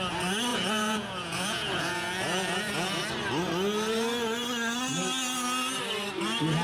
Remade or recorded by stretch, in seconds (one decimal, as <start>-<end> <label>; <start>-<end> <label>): 0.0-0.5 recorded; 0.5-3.0 remade; 3.0-6.6 recorded